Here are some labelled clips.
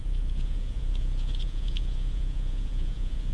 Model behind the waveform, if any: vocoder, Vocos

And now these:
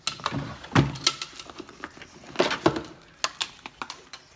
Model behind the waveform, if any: none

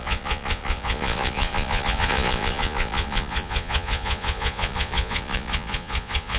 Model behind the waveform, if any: vocoder, Vocos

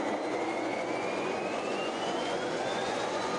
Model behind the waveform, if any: vocoder, Vocos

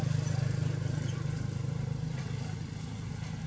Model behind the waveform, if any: none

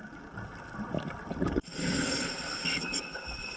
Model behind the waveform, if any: none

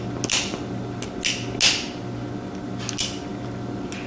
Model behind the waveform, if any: none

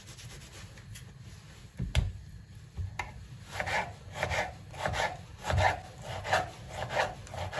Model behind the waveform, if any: none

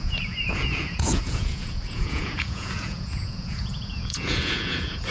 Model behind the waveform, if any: vocoder, Vocos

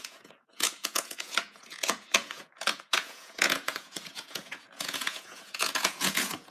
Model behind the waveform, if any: vocoder, Vocos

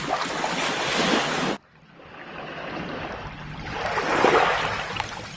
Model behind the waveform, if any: none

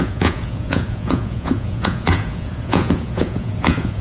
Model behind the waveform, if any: vocoder, Vocos